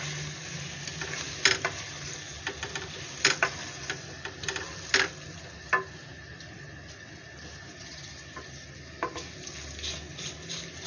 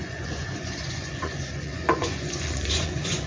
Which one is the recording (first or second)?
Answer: first